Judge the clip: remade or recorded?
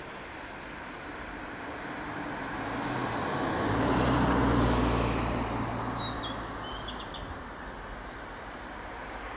recorded